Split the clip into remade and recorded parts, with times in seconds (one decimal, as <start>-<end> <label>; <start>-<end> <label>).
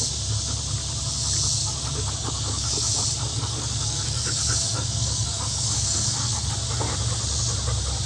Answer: 0.0-1.6 recorded; 1.6-2.9 remade; 2.9-3.3 recorded; 3.3-6.5 remade; 6.5-8.1 recorded